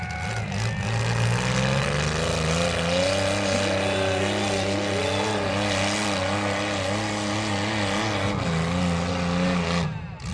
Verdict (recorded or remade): recorded